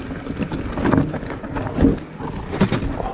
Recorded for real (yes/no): yes